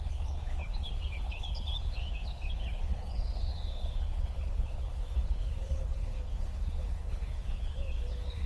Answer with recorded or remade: remade